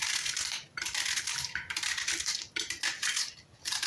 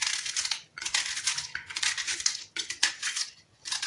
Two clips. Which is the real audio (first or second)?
first